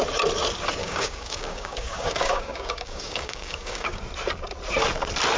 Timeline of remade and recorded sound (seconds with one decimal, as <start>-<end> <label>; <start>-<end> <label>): 0.0-0.8 recorded; 0.8-4.0 remade; 4.0-5.4 recorded